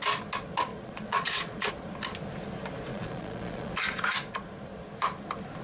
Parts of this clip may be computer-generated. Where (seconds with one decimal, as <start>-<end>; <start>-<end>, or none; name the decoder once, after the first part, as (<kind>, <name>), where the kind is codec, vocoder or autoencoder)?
0.7-1.7 (vocoder, Vocos); 2.9-3.7